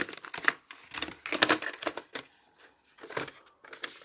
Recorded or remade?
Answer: recorded